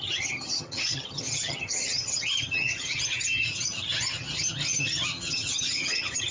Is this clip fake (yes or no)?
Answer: yes